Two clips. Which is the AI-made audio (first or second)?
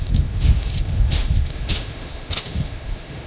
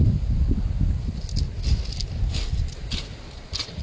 first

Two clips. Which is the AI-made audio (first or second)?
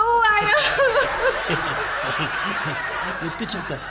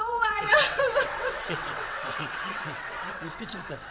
second